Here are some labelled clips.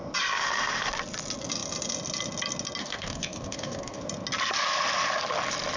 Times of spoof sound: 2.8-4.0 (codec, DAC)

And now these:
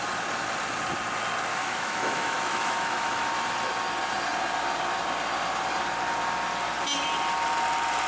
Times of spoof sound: 1.5-3.3 (autoencoder, DAC-VAE)

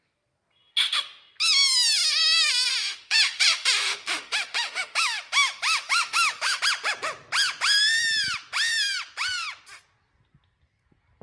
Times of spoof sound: 2.2-6.6 (autoencoder, DAC-VAE)

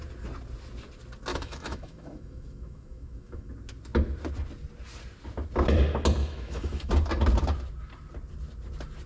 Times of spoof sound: 1.3-3.5 (autoencoder, DAC-VAE); 6.2-6.9

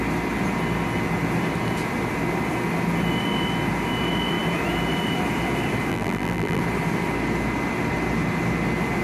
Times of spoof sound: 5.9-6.6 (vocoder, BigVGAN v2)

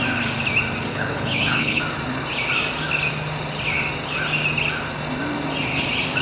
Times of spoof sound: 0.9-1.8 (codec, HILCodec)

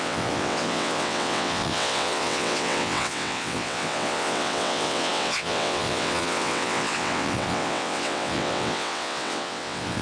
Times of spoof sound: 0.0-10.0 (vocoder, WaveNeXt)